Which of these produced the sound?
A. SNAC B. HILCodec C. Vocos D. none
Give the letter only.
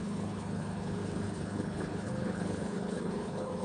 B